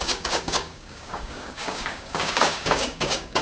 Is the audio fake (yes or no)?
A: yes